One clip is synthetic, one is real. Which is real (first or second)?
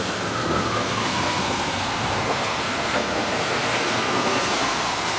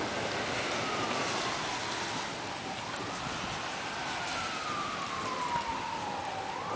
second